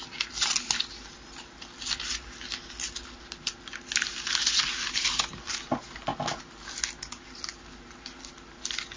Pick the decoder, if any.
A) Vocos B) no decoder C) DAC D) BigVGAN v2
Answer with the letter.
B